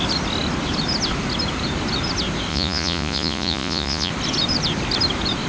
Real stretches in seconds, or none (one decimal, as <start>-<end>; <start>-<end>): 0.0-2.5; 4.1-5.5